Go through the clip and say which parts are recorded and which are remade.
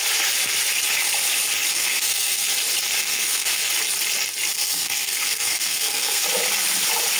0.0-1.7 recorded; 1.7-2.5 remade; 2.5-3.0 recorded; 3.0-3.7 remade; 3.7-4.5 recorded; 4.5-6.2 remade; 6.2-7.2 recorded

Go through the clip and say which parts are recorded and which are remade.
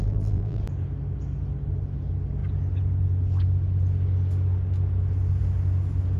0.0-0.6 remade; 0.6-6.2 recorded